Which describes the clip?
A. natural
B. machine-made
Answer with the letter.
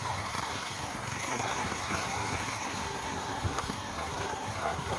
B